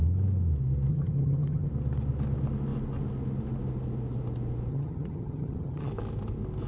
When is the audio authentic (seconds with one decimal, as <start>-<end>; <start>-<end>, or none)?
0.0-0.9; 1.7-4.7; 5.9-6.7